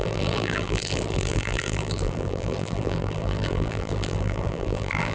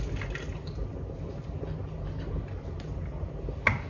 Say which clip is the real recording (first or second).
second